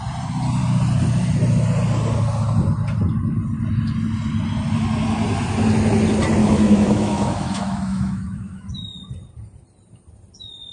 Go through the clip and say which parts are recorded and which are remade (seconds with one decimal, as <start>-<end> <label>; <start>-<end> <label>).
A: 0.0-6.4 recorded; 6.4-8.7 remade; 8.7-10.7 recorded